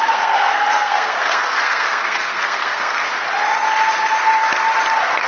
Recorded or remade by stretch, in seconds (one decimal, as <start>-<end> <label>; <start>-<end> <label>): 0.0-3.0 remade; 3.0-5.3 recorded